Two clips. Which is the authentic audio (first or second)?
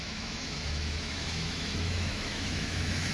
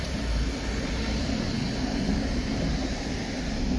second